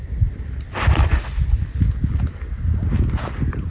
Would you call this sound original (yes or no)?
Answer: yes